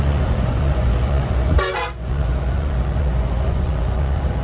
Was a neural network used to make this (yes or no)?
yes